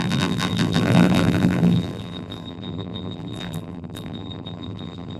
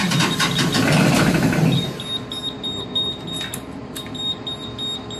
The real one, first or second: second